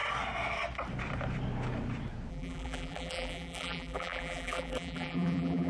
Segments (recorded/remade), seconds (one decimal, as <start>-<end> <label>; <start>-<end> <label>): 0.0-2.3 recorded; 2.3-5.7 remade